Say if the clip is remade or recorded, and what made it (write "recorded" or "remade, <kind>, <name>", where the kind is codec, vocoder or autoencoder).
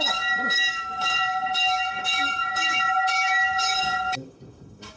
remade, codec, DAC